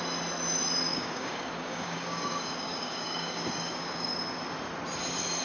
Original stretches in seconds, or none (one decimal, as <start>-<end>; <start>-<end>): 0.0-0.9; 4.1-5.4